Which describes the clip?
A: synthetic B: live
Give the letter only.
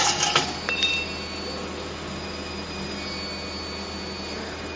B